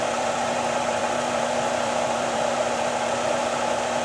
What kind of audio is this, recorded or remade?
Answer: remade